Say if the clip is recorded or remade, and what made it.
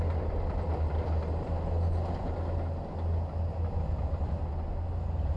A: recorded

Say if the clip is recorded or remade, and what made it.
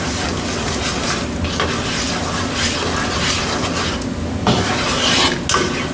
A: recorded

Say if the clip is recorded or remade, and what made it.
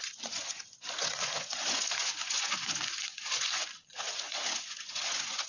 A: remade, vocoder, Vocos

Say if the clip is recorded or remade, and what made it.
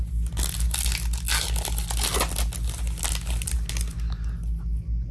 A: recorded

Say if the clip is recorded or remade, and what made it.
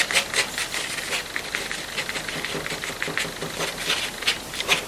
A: recorded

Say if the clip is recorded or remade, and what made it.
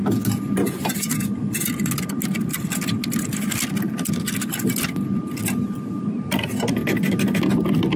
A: recorded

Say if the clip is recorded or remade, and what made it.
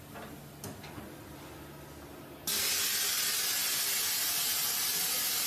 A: recorded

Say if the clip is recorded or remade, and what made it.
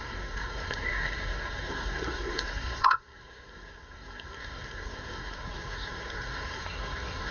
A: remade, codec, SNAC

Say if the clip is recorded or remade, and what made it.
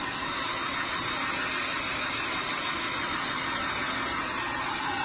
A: recorded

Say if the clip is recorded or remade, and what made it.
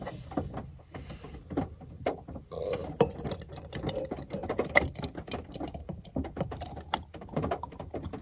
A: recorded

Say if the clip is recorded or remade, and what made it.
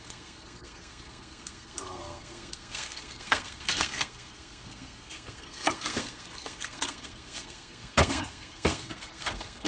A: remade, codec, SNAC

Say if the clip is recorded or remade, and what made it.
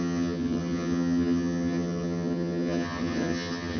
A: remade, vocoder, HiFi-GAN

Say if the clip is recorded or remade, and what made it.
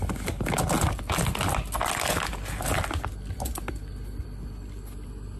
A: recorded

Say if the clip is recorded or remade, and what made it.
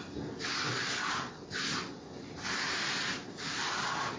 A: recorded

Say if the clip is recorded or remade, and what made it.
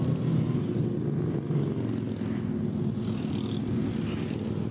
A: recorded